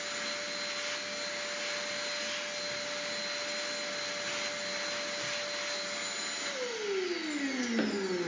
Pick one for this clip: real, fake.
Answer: real